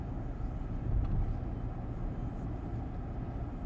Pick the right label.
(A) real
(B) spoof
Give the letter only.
A